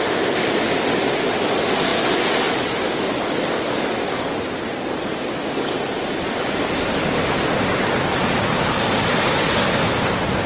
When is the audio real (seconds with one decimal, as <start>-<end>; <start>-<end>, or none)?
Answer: 0.0-10.5